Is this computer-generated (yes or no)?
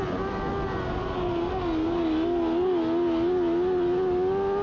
no